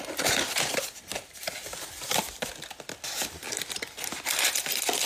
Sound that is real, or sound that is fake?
real